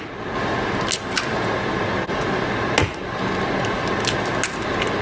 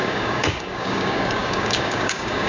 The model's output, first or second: second